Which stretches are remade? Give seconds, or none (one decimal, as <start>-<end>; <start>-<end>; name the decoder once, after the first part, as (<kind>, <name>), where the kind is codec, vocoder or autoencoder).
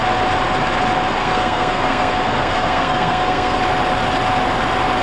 1.2-3.6 (codec, SNAC)